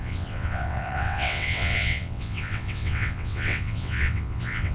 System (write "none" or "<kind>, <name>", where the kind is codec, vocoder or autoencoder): vocoder, WaveNeXt